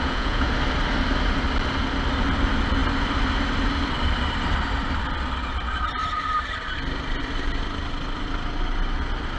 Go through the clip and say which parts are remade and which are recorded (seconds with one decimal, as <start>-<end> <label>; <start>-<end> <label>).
0.0-0.5 remade; 0.5-9.4 recorded